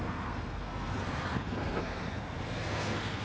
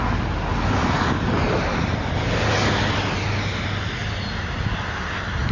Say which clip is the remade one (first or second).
first